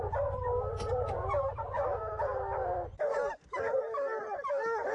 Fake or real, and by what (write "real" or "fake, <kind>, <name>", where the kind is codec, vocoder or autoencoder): real